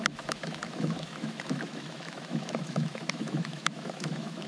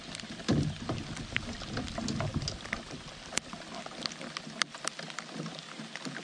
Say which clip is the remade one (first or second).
first